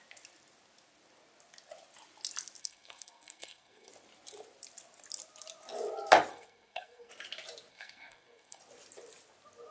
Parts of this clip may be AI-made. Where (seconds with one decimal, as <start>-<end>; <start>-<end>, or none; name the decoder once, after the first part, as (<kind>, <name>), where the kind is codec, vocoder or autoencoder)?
2.6-3.9 (codec, SNAC); 6.3-7.1; 7.7-8.6